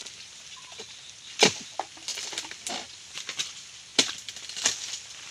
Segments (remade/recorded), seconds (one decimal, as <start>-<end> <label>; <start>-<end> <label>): 0.0-5.3 recorded